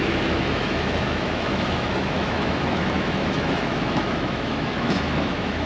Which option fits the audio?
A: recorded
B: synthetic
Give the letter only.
B